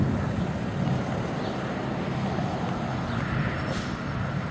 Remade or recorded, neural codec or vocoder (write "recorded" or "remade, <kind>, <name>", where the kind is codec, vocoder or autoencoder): recorded